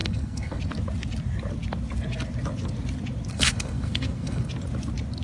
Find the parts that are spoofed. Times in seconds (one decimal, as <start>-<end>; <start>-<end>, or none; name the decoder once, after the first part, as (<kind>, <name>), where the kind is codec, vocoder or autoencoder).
0.0-0.6 (codec, SNAC); 3.3-4.5